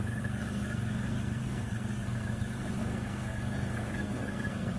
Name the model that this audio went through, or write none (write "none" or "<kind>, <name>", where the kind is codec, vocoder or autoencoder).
codec, SNAC